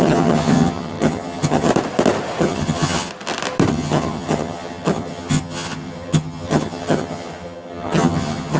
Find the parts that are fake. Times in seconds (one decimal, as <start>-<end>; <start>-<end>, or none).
0.0-1.7; 2.4-3.1; 3.7-8.6